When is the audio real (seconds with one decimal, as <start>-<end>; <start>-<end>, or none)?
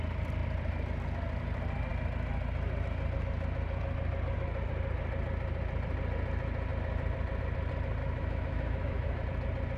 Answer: 0.0-8.0; 9.2-9.8